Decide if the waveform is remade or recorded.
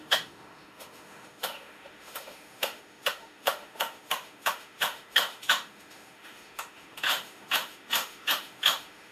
remade